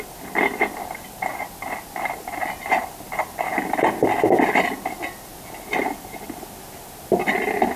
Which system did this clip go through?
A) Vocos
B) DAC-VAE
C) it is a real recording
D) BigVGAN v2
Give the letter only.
C